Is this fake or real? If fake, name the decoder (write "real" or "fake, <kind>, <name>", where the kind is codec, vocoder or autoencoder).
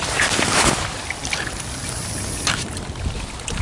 real